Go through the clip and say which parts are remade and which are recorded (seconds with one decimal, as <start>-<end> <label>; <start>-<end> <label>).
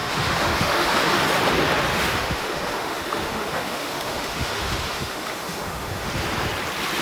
0.0-1.2 remade; 1.2-1.9 recorded; 1.9-6.1 remade; 6.1-7.0 recorded